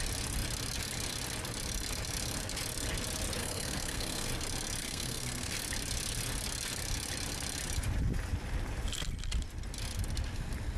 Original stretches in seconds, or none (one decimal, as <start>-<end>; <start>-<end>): 0.0-3.4; 4.3-4.8; 5.6-10.8